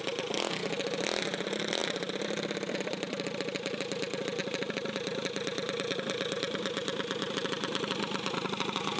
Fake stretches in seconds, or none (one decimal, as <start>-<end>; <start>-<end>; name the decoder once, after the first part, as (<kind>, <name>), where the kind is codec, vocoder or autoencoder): none